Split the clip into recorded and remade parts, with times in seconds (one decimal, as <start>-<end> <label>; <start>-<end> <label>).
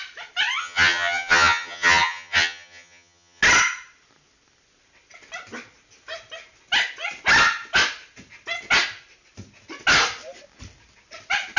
0.0-0.6 recorded; 0.6-3.4 remade; 3.4-11.6 recorded